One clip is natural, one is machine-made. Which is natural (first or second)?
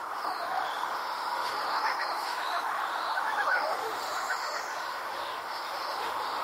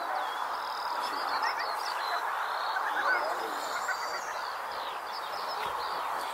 second